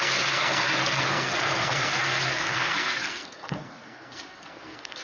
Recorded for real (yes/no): no